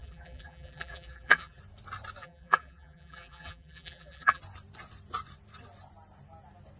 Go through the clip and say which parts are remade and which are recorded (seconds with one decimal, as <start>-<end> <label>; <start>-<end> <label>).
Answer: 0.0-1.6 remade; 1.6-2.2 recorded; 2.2-4.4 remade; 4.4-6.8 recorded